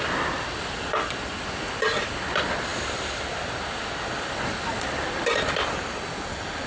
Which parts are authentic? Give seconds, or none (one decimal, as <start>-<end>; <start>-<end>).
0.0-6.7